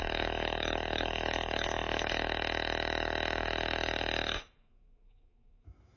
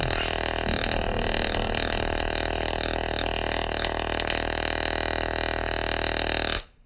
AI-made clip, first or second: first